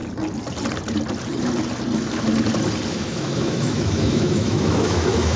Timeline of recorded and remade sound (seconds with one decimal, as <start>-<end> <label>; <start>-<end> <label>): 0.0-2.9 recorded; 2.9-5.4 remade